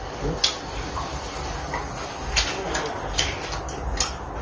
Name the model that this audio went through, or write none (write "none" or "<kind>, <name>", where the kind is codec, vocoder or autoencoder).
none